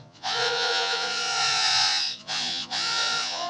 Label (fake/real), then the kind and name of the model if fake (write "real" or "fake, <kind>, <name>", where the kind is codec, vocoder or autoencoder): fake, vocoder, Vocos